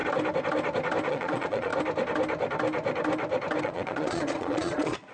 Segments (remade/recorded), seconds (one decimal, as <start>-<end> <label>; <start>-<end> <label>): 0.0-1.1 recorded; 1.1-1.7 remade; 1.7-3.6 recorded; 3.6-5.1 remade